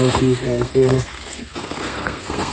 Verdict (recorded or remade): remade